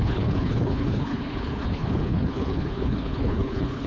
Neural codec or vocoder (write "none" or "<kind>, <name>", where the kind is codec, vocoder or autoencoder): codec, HILCodec